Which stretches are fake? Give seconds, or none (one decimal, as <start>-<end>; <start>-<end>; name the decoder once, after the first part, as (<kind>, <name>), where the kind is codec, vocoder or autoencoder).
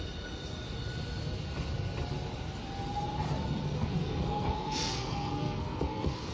3.6-6.3 (codec, SNAC)